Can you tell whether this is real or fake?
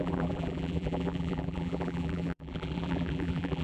fake